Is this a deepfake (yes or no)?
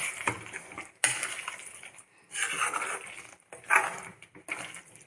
no